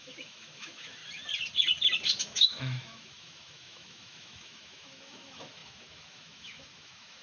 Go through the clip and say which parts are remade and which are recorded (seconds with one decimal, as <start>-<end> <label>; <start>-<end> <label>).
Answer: 0.0-1.0 remade; 1.0-2.2 recorded; 2.2-7.2 remade